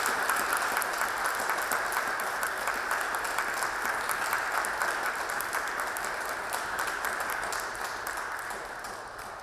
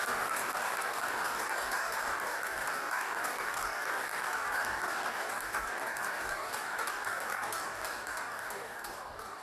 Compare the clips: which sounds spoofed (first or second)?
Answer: second